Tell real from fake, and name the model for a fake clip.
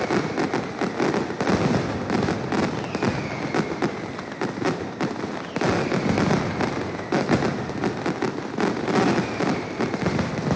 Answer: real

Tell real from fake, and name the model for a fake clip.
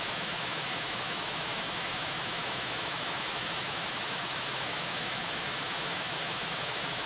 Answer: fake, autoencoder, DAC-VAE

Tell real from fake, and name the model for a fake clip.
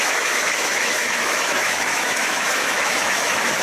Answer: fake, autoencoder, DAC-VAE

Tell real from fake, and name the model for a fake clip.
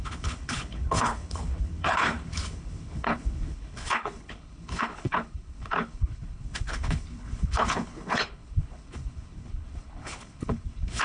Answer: fake, codec, HILCodec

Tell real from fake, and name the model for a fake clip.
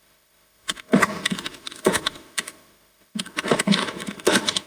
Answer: fake, autoencoder, DAC-VAE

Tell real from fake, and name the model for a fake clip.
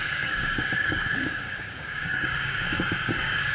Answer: fake, codec, DAC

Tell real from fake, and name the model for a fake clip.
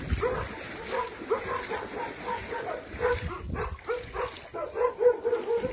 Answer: real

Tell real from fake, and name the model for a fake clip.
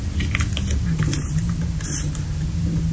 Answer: real